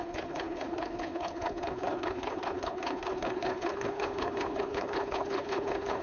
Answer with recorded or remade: remade